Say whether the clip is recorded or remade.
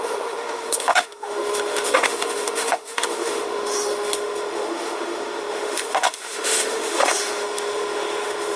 remade